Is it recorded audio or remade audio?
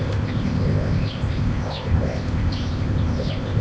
remade